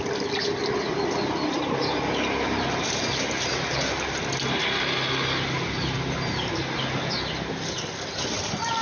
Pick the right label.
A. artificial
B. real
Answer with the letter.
B